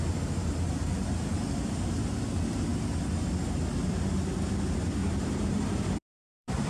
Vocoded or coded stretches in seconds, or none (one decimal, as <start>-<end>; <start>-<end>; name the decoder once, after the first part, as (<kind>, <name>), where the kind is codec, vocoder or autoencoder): 5.0-6.7 (vocoder, BigVGAN v2)